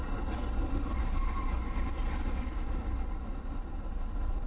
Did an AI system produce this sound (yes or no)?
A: no